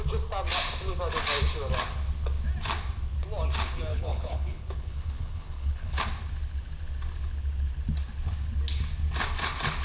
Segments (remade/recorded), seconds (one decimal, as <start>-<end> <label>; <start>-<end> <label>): 0.0-3.9 recorded; 3.9-6.0 remade; 6.0-9.8 recorded

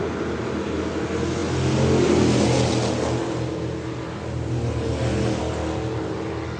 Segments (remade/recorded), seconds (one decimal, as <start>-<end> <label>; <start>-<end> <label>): 0.0-6.6 recorded

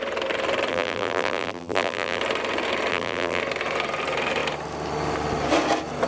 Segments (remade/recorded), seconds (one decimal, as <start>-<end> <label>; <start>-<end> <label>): 0.0-0.7 recorded; 0.7-2.2 remade; 2.2-2.9 recorded; 2.9-3.4 remade; 3.4-6.1 recorded

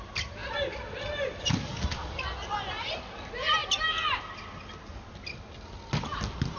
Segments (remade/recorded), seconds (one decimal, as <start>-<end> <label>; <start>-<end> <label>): 0.0-6.6 recorded

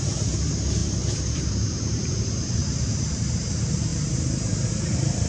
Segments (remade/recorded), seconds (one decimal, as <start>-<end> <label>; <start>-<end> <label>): 0.0-5.3 remade

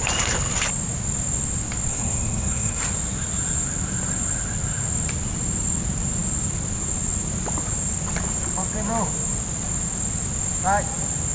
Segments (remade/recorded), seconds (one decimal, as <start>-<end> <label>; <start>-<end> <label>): 0.0-1.9 recorded; 1.9-2.8 remade; 2.8-11.3 recorded